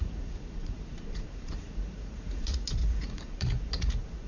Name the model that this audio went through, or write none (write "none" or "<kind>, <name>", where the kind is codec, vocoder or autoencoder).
vocoder, Vocos